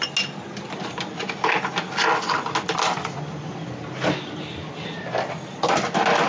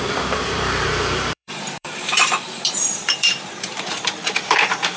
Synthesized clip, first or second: second